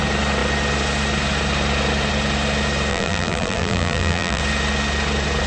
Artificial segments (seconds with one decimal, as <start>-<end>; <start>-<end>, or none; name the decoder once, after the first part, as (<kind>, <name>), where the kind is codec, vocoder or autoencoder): 2.9-4.4 (vocoder, BigVGAN v2)

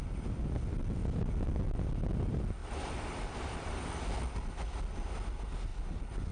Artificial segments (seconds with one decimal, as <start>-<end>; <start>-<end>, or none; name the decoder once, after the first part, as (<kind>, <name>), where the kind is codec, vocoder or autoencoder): 2.6-3.8 (vocoder, BigVGAN v2)

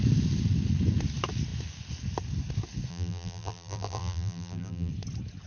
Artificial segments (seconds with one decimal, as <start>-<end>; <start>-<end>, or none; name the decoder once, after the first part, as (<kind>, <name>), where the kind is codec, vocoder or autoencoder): 2.9-4.9 (vocoder, BigVGAN v2)

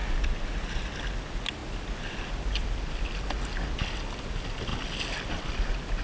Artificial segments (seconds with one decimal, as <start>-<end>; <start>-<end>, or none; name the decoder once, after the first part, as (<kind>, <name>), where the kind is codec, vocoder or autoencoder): none

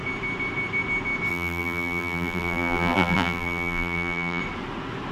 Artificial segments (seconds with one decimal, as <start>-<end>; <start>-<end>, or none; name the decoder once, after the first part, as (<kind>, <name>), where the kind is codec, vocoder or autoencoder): 1.3-4.4 (vocoder, BigVGAN v2)

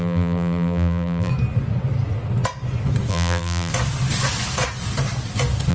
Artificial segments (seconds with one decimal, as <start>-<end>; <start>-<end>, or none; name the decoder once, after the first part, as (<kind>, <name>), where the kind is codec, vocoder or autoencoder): 0.0-1.3 (vocoder, BigVGAN v2); 3.1-3.7

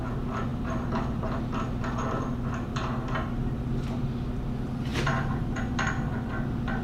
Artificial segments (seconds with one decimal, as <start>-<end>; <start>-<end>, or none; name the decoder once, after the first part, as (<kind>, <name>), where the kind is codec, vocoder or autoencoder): 4.9-5.4 (vocoder, BigVGAN v2)

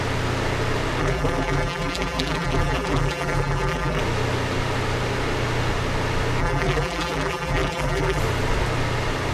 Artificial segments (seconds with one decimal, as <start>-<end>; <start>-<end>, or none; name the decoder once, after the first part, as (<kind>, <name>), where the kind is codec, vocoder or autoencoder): 1.0-4.0 (vocoder, BigVGAN v2); 6.4-8.2